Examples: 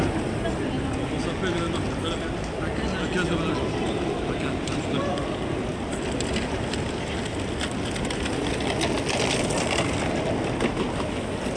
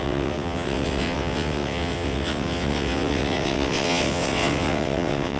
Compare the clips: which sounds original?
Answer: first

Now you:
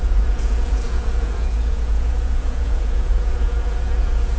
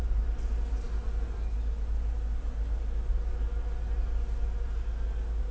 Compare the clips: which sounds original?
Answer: second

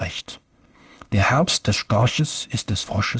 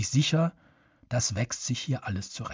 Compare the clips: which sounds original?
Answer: second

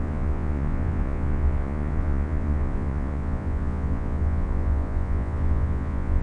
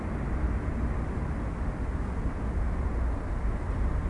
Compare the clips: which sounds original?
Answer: second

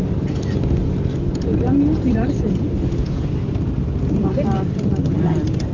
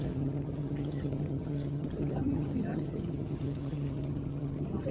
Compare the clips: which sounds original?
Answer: first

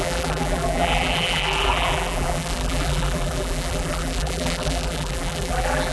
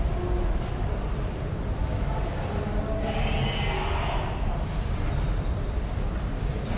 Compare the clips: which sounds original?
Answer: second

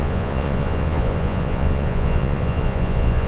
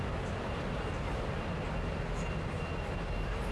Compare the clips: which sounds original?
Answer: second